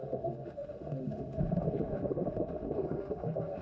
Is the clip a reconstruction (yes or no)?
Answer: yes